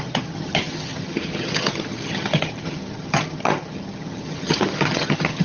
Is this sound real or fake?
fake